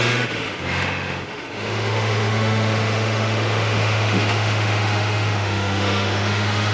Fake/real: fake